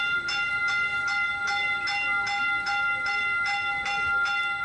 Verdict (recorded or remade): recorded